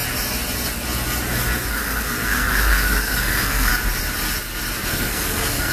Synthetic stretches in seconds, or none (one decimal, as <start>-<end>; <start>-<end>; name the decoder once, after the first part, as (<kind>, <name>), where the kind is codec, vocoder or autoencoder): 1.7-3.7 (codec, SNAC); 4.9-5.7